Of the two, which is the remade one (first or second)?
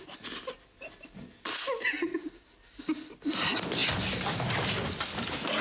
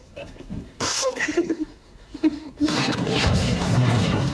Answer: second